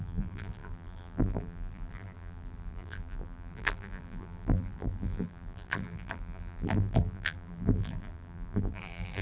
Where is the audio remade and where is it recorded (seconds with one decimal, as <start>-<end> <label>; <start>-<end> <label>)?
0.0-9.2 remade